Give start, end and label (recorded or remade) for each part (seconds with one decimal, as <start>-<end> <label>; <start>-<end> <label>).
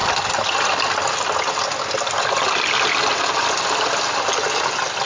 0.0-5.1 recorded